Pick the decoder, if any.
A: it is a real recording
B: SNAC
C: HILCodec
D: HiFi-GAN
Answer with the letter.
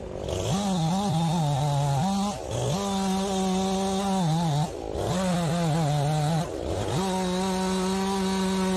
A